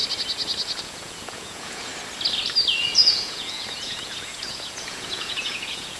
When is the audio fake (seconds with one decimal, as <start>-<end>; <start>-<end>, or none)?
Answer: 0.8-1.9; 2.8-6.0

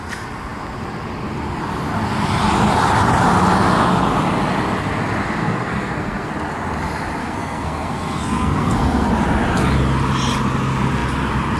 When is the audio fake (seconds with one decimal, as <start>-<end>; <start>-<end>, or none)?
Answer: 5.4-6.3; 7.2-9.1